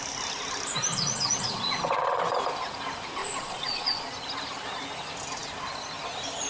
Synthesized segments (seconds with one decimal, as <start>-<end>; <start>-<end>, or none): 0.9-2.2; 3.2-4.1